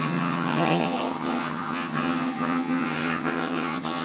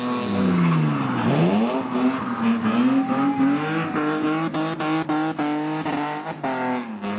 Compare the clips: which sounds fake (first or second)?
first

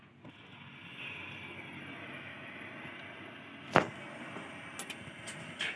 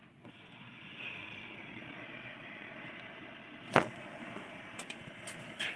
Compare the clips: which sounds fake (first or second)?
second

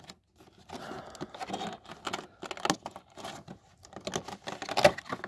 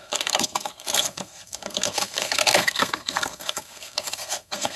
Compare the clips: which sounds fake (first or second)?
second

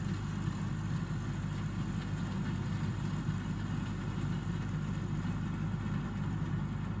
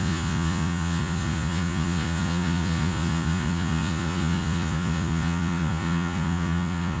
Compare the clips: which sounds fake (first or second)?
second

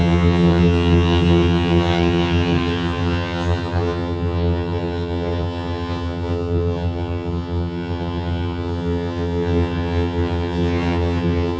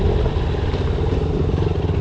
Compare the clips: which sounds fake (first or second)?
first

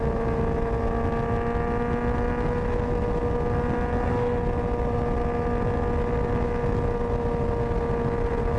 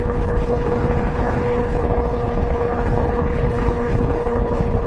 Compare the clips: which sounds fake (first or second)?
second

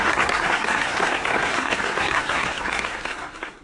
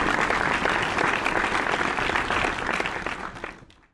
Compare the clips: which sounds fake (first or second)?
first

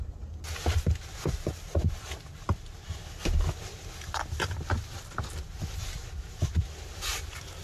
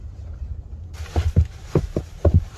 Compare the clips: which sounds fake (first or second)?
second